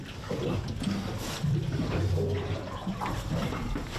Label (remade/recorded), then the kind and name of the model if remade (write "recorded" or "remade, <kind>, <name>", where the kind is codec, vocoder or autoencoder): recorded